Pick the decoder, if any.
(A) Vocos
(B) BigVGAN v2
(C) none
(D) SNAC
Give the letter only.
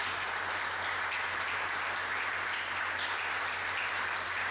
C